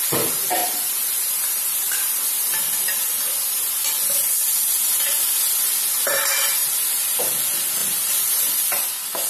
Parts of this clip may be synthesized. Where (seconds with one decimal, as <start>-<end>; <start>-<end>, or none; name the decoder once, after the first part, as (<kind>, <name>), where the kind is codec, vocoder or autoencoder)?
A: 0.6-2.0 (vocoder, BigVGAN v2); 6.6-7.2; 7.8-8.9